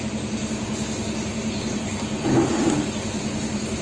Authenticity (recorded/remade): remade